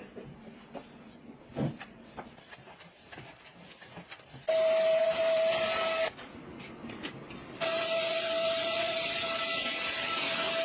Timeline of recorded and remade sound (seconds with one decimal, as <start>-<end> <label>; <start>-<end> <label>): 0.0-1.5 recorded; 1.5-2.4 remade; 2.4-8.4 recorded; 8.4-9.4 remade; 9.4-10.6 recorded